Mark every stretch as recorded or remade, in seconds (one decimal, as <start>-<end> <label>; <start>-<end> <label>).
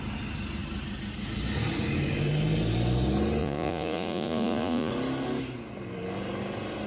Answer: 0.0-3.4 recorded; 3.4-4.9 remade; 4.9-6.9 recorded